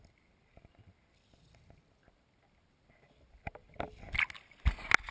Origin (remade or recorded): recorded